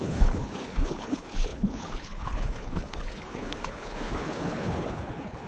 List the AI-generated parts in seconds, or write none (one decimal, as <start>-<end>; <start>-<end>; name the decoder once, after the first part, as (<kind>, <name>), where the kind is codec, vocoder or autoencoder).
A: 0.0-5.5 (codec, HILCodec)